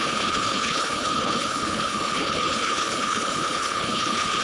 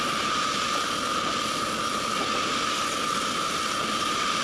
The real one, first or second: second